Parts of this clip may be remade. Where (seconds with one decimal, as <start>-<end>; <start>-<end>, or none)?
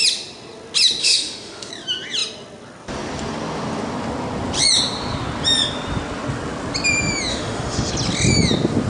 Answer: 1.0-1.7; 7.3-7.9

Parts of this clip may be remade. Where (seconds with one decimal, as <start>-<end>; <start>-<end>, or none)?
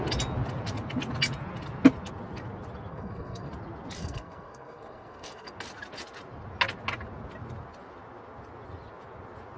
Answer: 2.9-3.5; 4.0-5.5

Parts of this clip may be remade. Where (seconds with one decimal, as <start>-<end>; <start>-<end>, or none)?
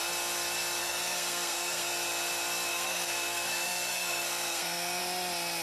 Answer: 0.8-1.9; 2.7-5.0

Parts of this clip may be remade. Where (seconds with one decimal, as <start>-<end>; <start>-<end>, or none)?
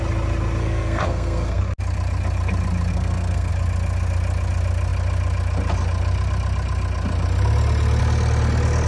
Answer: 0.6-1.6; 2.9-3.5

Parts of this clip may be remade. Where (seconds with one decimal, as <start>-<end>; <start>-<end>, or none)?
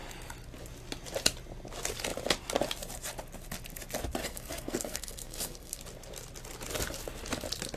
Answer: 4.2-5.8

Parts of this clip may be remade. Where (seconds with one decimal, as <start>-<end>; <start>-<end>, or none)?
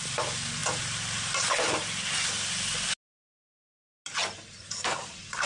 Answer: none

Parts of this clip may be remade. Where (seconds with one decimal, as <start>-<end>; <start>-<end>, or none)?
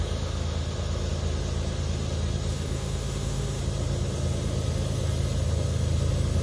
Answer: 2.5-3.6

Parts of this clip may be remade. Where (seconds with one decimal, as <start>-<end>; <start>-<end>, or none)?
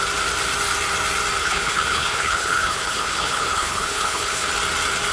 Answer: 1.4-4.5